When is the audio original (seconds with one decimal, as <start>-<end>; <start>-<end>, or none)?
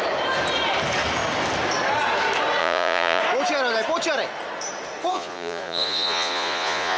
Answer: 0.0-2.6; 3.2-5.1